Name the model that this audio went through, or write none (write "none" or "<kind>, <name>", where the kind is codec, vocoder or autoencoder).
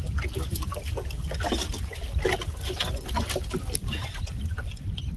none